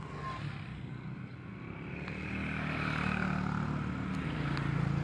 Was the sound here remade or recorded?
recorded